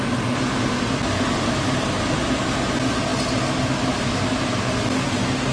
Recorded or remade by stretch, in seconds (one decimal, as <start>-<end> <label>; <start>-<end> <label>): 0.0-5.5 recorded